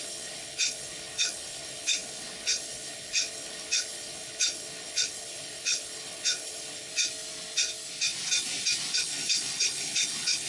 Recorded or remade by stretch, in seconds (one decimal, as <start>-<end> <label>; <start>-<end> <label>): 0.0-6.9 remade; 6.9-8.9 recorded; 8.9-10.5 remade